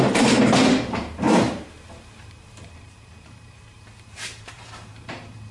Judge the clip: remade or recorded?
remade